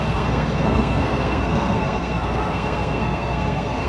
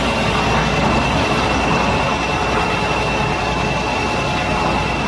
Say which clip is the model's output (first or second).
first